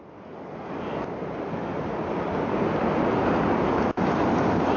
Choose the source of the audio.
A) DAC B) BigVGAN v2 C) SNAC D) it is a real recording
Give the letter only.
D